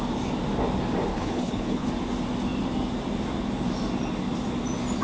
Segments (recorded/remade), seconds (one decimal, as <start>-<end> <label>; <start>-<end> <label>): 0.0-1.1 recorded; 1.1-1.9 remade; 1.9-5.0 recorded